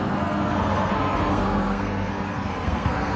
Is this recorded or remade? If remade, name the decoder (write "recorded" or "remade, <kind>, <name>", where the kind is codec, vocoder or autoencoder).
remade, codec, SNAC